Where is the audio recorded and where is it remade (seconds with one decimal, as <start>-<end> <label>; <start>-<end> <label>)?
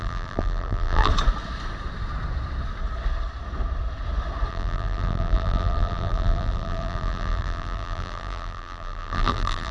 0.0-1.1 remade; 1.1-4.5 recorded; 4.5-9.7 remade